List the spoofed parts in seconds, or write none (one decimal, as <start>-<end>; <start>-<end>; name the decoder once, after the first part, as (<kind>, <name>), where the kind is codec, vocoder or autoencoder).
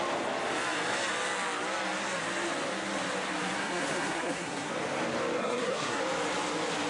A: 3.6-4.7 (codec, SNAC); 5.4-6.0